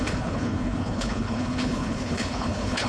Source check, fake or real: fake